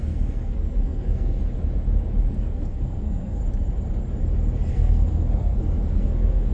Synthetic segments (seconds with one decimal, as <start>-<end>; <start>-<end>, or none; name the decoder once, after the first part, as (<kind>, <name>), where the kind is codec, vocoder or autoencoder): 0.0-1.4 (codec, SNAC); 2.3-3.4; 4.7-6.5